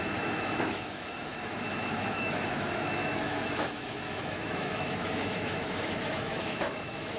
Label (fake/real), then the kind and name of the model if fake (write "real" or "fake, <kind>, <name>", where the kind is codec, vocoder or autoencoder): fake, autoencoder, DAC-VAE